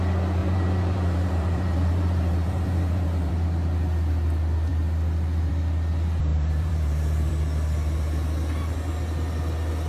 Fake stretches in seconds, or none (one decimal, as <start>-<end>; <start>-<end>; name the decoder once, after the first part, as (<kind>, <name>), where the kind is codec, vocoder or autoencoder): 0.4-3.3 (vocoder, BigVGAN v2); 6.3-7.3